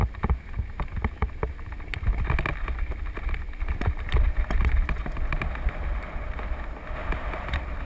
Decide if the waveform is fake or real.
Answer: real